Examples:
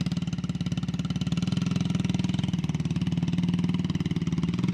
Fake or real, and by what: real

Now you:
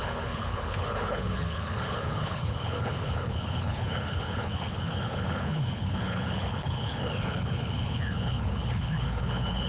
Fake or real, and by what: fake, codec, HILCodec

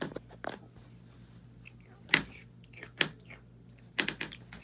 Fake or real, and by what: real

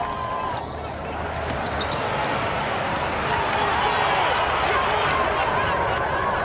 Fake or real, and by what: real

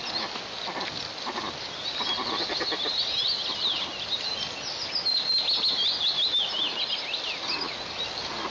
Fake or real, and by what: real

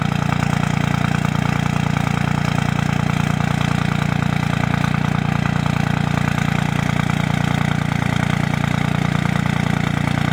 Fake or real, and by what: real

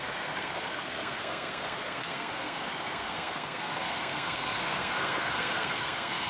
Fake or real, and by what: fake, codec, SNAC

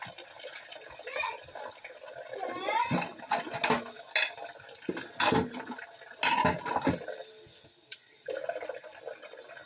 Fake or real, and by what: real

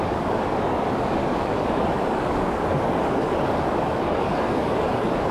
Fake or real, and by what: fake, codec, DAC